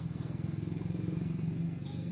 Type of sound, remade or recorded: remade